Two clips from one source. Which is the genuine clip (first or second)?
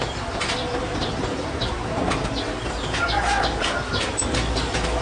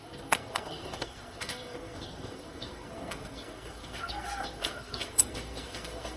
first